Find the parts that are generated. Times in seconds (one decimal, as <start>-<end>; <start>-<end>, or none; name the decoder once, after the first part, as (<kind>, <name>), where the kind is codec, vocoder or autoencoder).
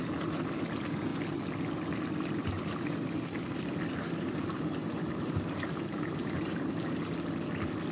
4.8-6.7 (vocoder, BigVGAN v2)